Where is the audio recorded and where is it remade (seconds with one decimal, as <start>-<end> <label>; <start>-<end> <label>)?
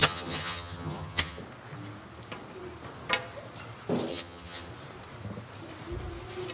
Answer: 0.0-1.4 remade; 1.4-4.1 recorded; 4.1-4.7 remade; 4.7-6.5 recorded